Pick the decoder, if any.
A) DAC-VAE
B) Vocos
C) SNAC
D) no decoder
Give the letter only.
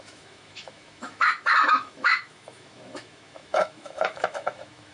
A